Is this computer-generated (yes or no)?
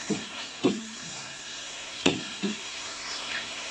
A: yes